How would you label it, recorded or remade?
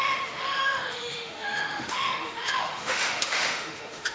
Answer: remade